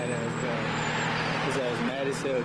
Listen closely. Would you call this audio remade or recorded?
remade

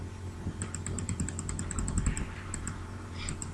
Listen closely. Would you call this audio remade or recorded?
remade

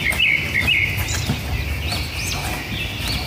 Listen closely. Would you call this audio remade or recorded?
recorded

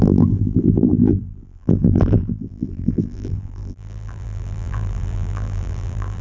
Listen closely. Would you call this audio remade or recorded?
remade